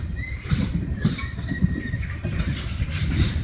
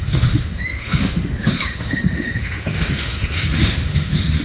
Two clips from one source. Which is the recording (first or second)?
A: first